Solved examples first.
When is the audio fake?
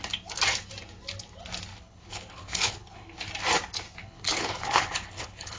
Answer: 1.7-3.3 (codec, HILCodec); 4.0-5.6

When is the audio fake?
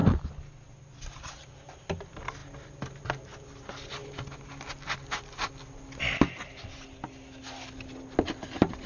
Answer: none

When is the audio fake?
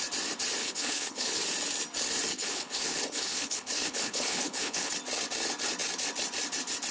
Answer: 0.6-1.4 (codec, HILCodec); 2.3-4.9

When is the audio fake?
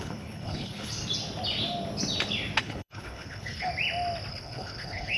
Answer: 0.0-1.0 (codec, HILCodec); 2.6-3.7; 4.3-5.2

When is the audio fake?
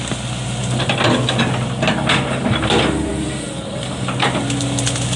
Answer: none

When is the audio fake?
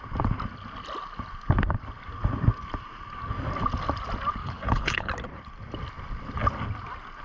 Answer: 4.4-5.1 (codec, HILCodec)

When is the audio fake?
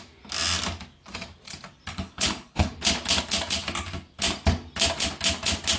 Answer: 1.9-2.7 (codec, HILCodec)